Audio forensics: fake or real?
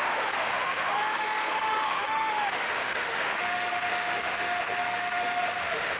fake